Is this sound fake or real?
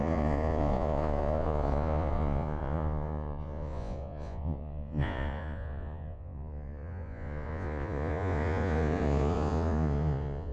fake